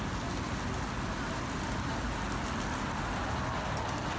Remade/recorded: recorded